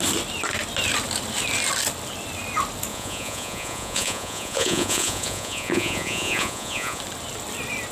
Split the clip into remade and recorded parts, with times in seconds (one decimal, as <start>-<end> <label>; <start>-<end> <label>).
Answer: 0.0-2.9 recorded; 2.9-7.0 remade; 7.0-7.9 recorded